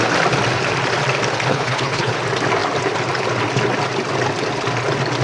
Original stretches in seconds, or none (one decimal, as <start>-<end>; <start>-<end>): 0.0-1.5; 2.1-5.2